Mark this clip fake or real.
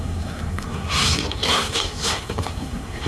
fake